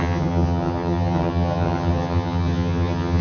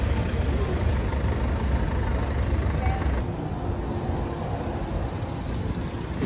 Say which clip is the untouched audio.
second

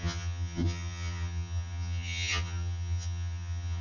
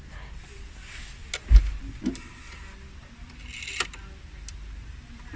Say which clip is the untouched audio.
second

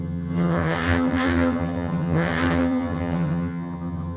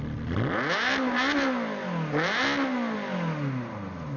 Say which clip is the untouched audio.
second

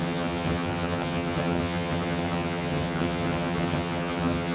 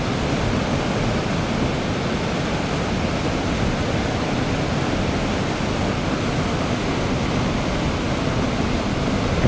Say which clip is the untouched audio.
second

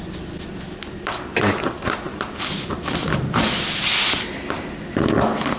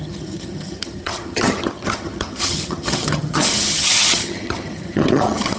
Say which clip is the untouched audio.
first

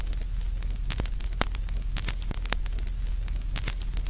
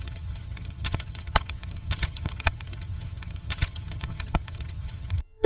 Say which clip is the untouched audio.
first